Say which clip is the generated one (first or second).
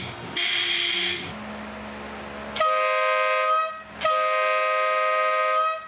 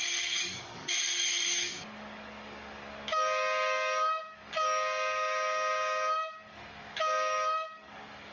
second